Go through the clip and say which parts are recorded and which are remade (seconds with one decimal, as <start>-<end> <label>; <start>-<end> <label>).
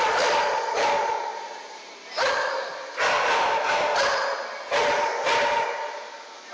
0.0-6.5 recorded